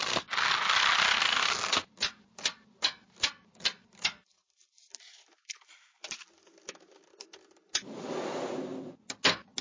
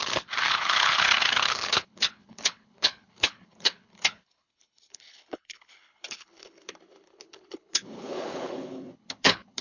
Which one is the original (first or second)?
first